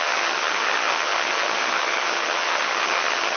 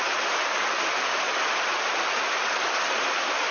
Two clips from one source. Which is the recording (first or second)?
second